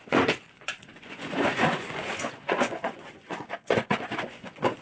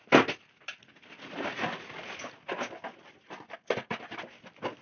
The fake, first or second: first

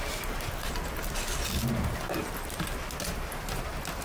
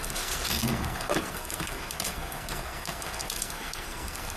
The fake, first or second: second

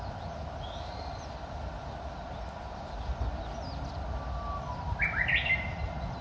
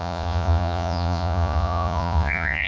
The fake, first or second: second